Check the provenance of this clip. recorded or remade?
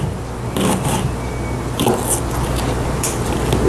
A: recorded